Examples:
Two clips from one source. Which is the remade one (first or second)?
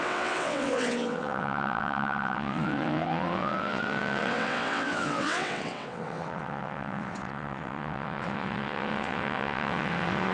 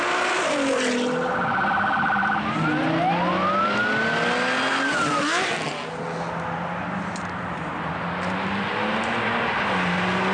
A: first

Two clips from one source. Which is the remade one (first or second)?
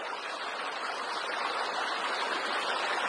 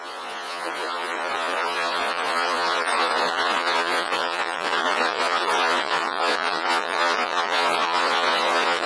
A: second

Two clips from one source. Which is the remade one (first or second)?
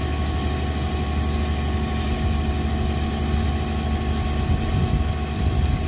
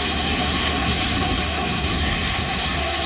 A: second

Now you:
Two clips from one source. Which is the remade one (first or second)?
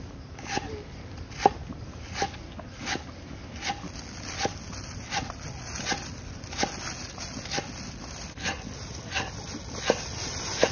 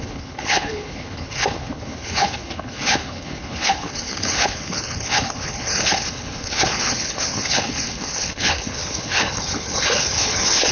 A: second